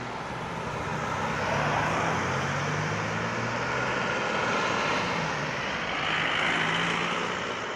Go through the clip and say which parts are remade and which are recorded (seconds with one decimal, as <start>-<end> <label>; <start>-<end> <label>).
0.0-7.8 recorded